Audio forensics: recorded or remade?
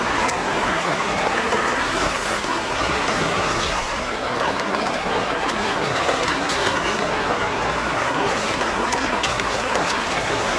remade